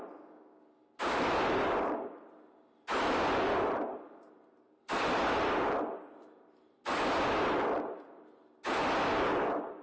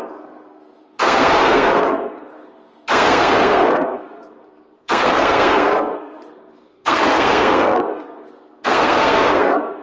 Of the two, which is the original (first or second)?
first